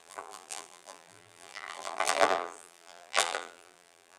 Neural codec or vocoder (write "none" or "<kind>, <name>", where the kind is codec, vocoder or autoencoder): vocoder, BigVGAN v2